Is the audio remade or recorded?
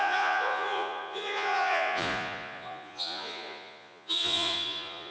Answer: remade